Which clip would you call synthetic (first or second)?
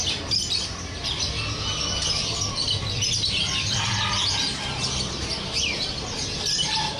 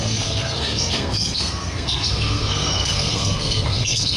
second